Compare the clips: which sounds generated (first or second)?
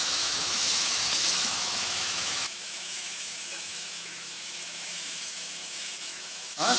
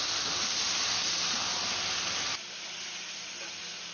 first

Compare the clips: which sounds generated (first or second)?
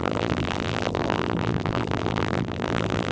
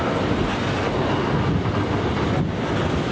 first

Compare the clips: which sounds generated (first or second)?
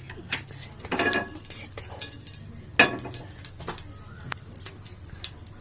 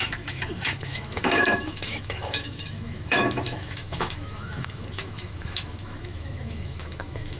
second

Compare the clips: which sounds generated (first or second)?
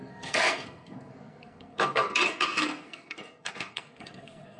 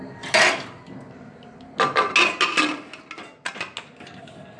first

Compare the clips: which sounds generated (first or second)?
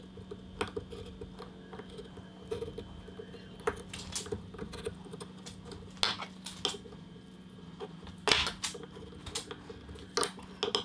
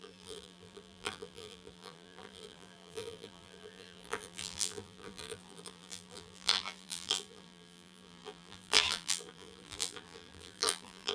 second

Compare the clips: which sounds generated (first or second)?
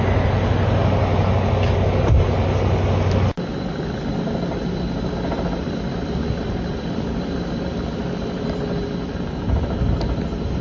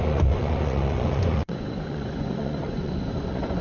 second